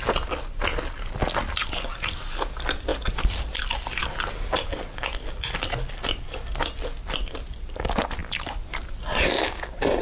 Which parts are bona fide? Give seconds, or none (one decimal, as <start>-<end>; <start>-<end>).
0.0-10.0